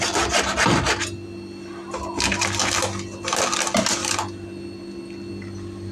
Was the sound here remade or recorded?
recorded